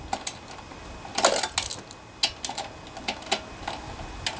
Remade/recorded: recorded